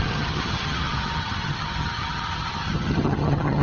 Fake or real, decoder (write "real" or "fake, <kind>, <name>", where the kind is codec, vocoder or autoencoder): fake, vocoder, HiFi-GAN